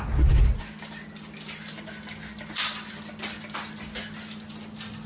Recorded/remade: recorded